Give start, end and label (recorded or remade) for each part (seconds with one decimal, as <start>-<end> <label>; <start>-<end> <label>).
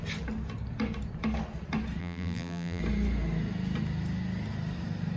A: 0.0-2.0 recorded; 2.0-2.8 remade; 2.8-5.2 recorded